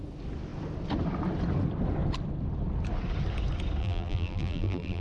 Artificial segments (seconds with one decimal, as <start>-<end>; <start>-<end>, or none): 3.8-5.0